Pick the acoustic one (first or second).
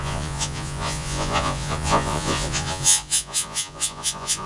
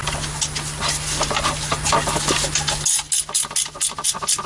second